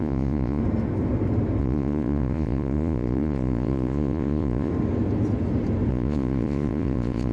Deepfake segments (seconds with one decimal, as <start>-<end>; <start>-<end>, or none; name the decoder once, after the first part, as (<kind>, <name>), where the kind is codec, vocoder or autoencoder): 0.0-0.6 (vocoder, Vocos); 1.6-4.7; 5.9-7.3

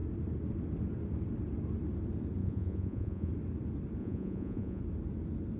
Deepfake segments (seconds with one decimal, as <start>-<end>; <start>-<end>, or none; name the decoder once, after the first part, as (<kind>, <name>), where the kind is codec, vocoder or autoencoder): 2.4-3.3 (vocoder, Vocos); 4.0-4.8

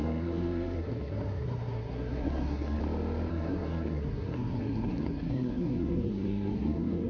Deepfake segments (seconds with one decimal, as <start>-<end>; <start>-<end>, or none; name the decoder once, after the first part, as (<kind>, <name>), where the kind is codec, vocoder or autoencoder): 0.0-2.8 (codec, SNAC); 3.3-7.1

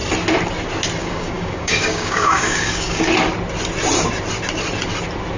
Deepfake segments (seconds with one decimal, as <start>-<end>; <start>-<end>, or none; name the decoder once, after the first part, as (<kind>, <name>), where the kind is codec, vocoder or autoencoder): 1.0-3.0 (codec, DAC)

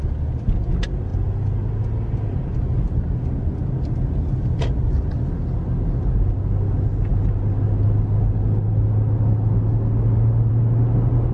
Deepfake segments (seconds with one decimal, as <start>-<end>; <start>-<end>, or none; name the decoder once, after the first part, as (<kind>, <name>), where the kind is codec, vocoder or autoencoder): none